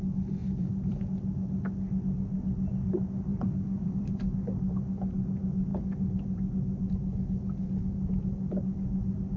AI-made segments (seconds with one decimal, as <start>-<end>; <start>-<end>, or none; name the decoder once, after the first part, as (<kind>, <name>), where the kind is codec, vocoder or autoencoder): 0.4-1.0 (vocoder, BigVGAN v2); 3.3-4.3